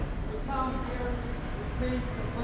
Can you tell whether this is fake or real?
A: real